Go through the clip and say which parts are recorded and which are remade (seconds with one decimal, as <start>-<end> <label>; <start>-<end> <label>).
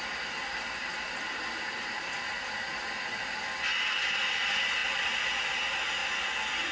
0.0-6.7 recorded